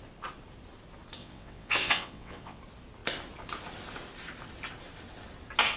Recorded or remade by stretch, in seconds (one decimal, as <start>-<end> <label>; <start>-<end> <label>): 0.0-1.2 recorded; 1.2-2.6 remade; 2.6-5.8 recorded